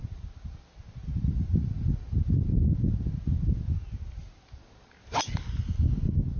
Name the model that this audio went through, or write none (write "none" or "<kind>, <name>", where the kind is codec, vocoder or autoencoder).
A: none